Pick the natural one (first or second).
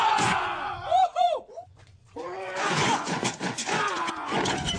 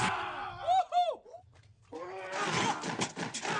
second